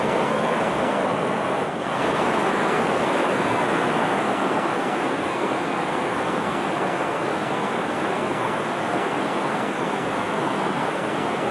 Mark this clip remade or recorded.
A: remade